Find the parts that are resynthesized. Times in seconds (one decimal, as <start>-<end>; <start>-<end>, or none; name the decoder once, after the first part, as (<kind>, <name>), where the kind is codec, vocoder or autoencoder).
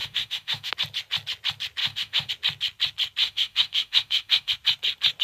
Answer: 0.0-0.7 (autoencoder, DAC-VAE); 1.8-2.3; 3.2-4.5